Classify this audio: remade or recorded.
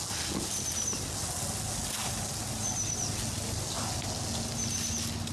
recorded